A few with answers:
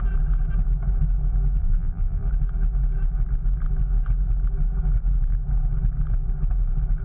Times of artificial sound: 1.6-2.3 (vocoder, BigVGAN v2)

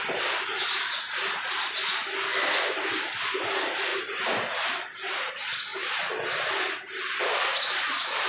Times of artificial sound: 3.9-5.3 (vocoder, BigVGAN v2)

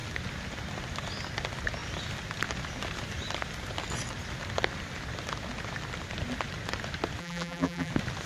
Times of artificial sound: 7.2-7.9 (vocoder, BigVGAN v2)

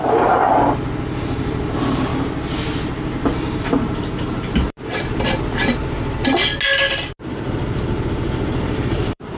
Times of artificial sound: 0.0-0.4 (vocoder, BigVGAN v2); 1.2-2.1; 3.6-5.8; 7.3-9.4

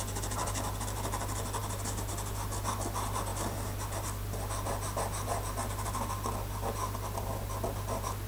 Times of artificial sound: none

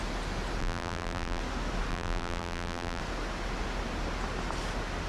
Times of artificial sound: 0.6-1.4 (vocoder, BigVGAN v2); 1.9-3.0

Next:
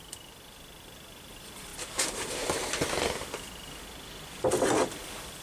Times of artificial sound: 0.0-1.7 (vocoder, BigVGAN v2); 4.9-5.4

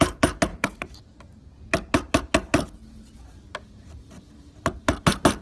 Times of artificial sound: 0.5-1.6 (vocoder, BigVGAN v2)